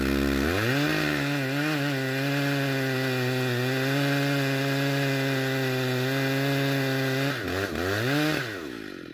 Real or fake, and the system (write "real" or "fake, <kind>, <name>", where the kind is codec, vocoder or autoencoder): real